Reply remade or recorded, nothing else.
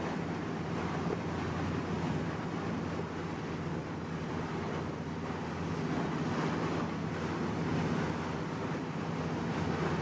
recorded